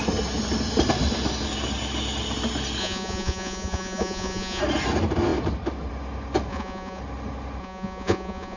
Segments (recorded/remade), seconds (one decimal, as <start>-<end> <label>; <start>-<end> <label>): 0.0-2.8 recorded; 2.8-4.6 remade; 4.6-6.5 recorded; 6.5-7.0 remade; 7.0-7.6 recorded; 7.6-8.6 remade